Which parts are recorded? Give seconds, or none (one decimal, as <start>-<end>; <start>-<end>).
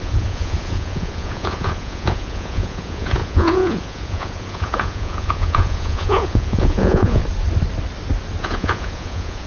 7.2-8.4